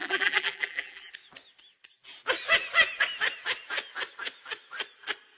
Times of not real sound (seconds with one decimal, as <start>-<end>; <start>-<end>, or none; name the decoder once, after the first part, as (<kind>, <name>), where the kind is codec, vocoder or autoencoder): 0.0-1.1 (vocoder, BigVGAN v2)